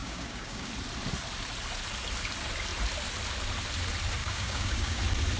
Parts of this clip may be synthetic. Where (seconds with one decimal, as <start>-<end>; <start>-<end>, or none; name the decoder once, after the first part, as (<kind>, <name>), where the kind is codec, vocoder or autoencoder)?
0.0-0.7 (codec, DAC); 4.2-5.0